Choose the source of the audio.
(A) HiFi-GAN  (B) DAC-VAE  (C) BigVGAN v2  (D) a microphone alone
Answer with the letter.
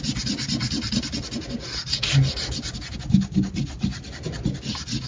D